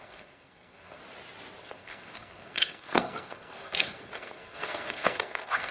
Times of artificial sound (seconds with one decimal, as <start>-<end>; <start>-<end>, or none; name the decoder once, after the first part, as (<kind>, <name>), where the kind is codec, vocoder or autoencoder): 0.0-1.0 (codec, SNAC); 1.6-5.7